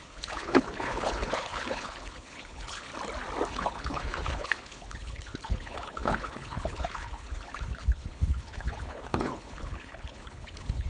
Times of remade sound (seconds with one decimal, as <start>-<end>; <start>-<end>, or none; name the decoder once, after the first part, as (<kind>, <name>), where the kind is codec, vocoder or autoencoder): 0.0-2.9 (codec, HILCodec); 3.5-10.9